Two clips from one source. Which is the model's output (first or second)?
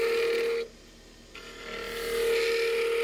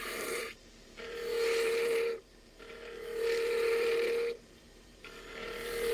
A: second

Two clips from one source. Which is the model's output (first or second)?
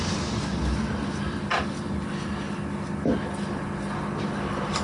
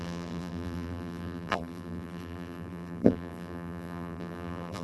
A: second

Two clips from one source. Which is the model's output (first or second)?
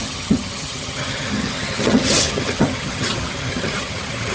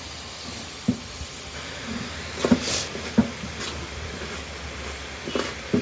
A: first